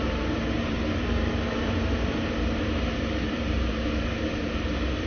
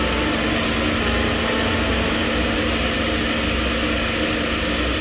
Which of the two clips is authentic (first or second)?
second